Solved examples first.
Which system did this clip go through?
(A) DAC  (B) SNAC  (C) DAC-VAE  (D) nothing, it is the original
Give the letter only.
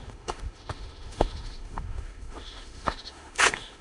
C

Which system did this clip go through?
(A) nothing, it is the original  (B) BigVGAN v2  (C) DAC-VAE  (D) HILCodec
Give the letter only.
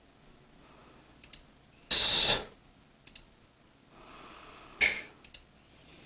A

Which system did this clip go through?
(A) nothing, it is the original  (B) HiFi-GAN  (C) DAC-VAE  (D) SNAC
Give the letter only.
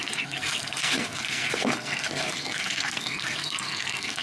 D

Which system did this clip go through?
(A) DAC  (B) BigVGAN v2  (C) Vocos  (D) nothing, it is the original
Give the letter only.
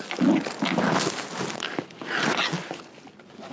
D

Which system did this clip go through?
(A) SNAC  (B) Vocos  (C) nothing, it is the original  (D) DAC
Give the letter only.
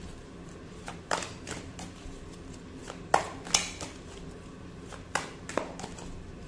C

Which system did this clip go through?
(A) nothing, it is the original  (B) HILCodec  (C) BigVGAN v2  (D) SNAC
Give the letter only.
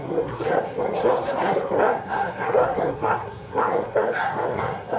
D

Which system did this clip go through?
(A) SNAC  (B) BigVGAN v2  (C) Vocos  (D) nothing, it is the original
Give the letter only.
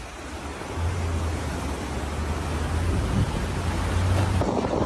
D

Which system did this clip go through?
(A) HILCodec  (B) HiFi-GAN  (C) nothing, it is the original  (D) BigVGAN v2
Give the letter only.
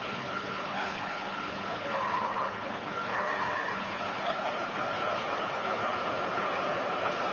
A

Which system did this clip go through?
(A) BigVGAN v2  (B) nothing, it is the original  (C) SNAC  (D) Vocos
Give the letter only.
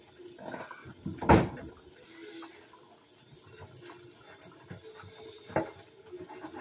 B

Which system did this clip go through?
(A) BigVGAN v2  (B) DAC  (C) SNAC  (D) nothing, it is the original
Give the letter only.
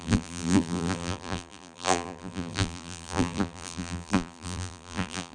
A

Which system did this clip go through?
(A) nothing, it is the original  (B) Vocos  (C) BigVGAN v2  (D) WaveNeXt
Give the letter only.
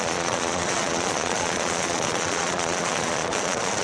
B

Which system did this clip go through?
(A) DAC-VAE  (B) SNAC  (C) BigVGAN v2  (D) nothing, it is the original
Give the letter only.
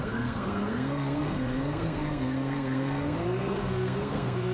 B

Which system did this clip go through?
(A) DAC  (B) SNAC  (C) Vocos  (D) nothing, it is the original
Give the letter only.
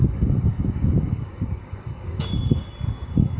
A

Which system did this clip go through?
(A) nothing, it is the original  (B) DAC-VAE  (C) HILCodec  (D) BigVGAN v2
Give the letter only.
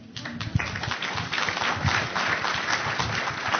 A